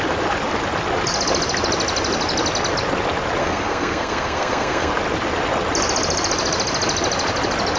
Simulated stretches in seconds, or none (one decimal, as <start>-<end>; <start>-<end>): 3.4-4.9